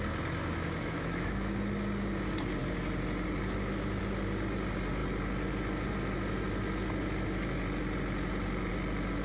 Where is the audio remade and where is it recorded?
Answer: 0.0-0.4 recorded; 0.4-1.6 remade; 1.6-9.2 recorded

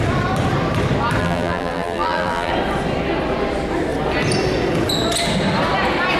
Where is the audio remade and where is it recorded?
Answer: 0.0-1.2 recorded; 1.2-2.5 remade; 2.5-6.2 recorded

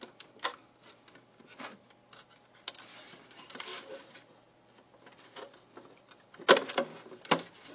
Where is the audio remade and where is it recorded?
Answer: 0.0-3.7 recorded; 3.7-4.2 remade; 4.2-7.7 recorded

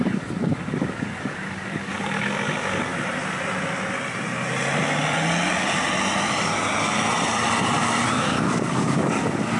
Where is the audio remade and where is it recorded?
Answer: 0.0-2.9 remade; 2.9-8.1 recorded; 8.1-9.6 remade

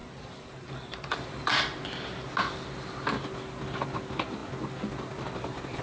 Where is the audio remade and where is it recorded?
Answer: 0.0-1.6 remade; 1.6-5.8 recorded